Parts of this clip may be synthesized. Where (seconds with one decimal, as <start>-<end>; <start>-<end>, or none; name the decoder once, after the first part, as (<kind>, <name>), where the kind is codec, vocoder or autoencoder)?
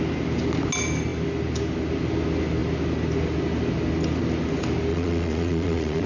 4.9-6.1 (vocoder, Vocos)